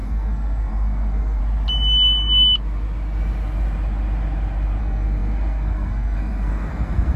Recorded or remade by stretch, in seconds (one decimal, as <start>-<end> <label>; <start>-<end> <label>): 0.0-1.4 remade; 1.4-4.8 recorded; 4.8-7.2 remade